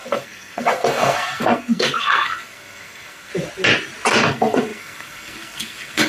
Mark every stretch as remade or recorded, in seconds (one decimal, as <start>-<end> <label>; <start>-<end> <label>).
0.0-3.3 remade; 3.3-4.1 recorded; 4.1-6.1 remade